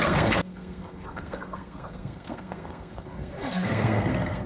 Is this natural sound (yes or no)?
no